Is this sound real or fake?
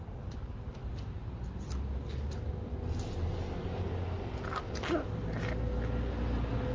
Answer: real